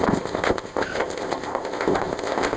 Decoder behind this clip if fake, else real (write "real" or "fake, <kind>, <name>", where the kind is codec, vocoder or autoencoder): fake, codec, ZipCodec